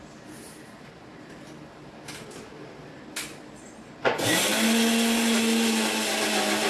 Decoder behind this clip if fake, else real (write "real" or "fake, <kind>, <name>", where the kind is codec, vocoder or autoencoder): real